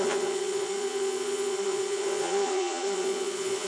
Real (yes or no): no